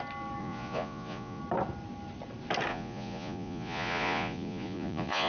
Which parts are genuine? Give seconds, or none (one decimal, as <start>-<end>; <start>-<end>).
0.0-0.4; 1.4-2.7